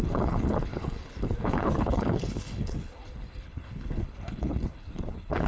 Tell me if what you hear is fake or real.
fake